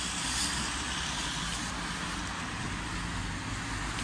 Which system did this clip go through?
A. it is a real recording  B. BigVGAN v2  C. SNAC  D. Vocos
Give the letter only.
A